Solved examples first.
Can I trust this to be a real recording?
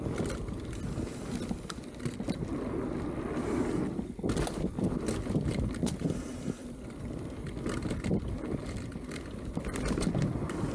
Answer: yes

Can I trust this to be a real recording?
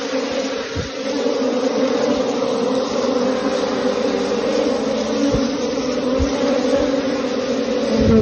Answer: yes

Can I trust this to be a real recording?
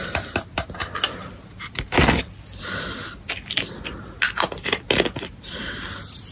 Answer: yes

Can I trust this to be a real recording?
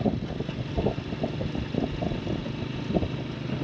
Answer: yes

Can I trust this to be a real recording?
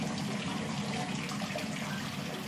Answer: yes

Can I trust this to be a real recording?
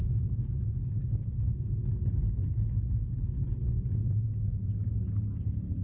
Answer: yes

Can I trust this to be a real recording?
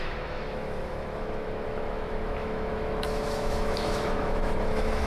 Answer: no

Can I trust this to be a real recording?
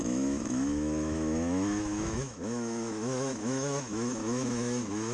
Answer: no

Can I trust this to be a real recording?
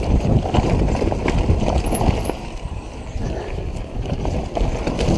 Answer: yes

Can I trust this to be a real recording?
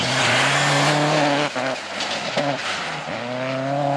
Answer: yes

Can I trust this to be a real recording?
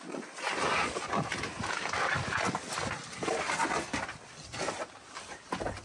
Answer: yes